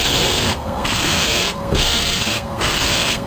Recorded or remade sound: remade